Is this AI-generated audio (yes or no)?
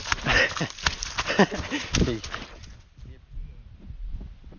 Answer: no